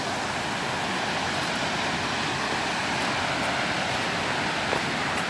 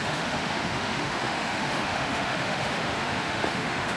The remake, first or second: second